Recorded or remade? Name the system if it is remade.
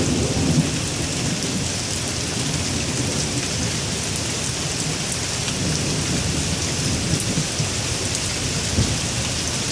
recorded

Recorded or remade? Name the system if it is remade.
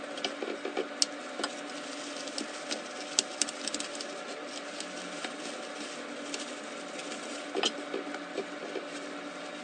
recorded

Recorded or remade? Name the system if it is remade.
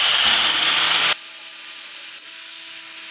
recorded